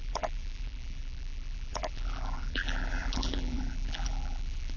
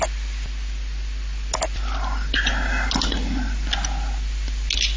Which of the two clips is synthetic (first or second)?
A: first